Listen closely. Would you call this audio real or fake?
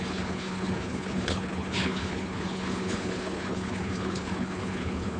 fake